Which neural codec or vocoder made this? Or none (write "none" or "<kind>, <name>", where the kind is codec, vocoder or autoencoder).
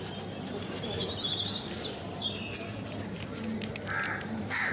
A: none